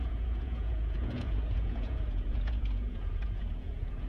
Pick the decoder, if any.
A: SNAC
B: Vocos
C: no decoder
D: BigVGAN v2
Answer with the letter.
B